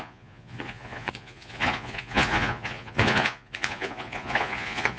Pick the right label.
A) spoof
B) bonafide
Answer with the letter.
A